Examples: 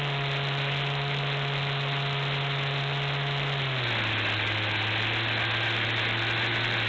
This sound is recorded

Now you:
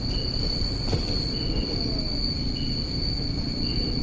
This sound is recorded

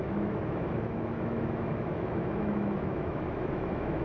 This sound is remade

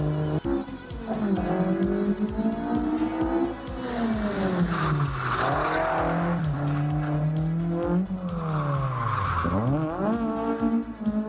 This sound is recorded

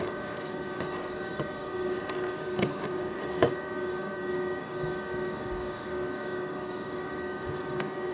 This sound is remade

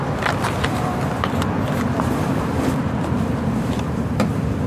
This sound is remade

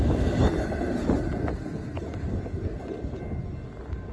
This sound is recorded